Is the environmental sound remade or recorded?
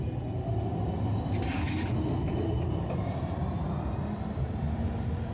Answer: recorded